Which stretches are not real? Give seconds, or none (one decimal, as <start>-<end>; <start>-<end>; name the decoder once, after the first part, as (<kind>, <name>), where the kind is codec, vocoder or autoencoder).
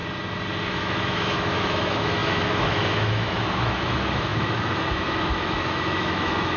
0.7-6.6 (autoencoder, DAC-VAE)